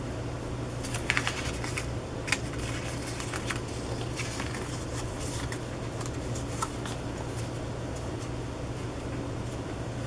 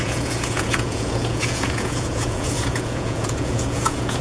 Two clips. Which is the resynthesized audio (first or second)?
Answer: second